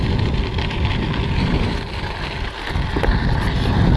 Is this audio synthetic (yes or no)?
no